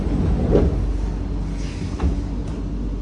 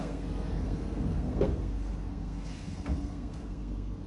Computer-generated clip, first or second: second